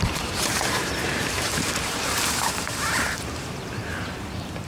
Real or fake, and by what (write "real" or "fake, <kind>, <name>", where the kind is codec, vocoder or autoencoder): fake, vocoder, BigVGAN v2